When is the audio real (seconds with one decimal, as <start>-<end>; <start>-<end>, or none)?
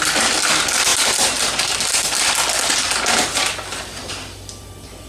0.0-5.1